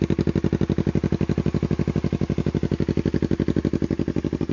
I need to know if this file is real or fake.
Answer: real